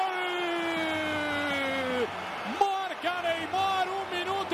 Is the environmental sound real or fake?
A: real